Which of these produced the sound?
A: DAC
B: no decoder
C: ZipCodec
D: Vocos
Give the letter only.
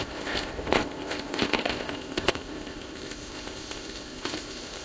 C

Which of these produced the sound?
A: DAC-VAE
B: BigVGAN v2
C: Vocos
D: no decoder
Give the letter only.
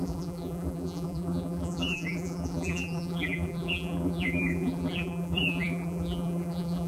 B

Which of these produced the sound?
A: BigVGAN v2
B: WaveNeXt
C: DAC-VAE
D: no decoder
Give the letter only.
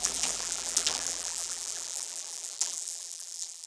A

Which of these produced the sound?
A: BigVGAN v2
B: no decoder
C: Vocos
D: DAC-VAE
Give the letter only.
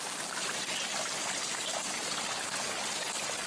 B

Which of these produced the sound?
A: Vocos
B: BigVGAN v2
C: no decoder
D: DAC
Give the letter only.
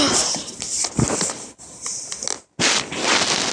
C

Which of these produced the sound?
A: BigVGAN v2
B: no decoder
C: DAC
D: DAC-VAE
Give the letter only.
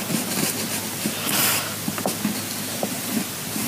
B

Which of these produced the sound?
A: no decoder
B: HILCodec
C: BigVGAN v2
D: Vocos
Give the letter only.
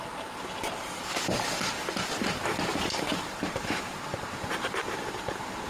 C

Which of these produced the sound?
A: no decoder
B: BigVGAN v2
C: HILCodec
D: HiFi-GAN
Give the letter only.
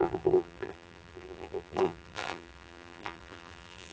B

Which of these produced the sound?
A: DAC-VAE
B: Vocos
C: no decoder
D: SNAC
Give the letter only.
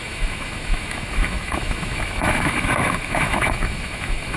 A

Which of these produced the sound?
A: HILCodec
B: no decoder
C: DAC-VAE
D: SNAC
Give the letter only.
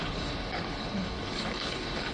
A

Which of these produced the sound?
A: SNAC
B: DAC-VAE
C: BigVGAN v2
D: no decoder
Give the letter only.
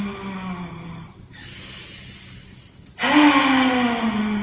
D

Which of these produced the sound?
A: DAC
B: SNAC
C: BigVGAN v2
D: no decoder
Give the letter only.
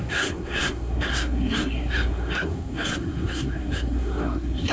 B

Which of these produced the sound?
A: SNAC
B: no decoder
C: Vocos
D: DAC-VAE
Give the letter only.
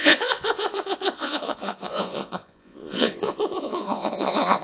C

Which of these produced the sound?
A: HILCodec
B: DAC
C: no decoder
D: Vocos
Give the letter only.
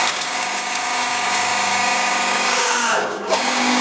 B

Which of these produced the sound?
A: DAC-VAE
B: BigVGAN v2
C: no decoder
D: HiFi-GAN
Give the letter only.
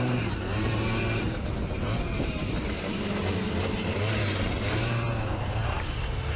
B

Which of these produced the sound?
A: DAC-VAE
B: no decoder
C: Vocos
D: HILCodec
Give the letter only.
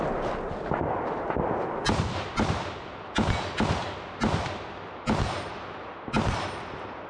B